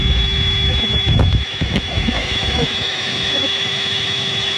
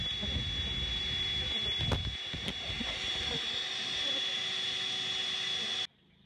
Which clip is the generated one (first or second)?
first